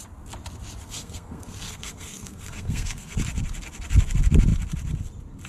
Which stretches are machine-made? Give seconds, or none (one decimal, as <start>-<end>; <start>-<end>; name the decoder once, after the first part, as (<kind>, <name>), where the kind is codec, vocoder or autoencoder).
0.8-3.2 (codec, SNAC)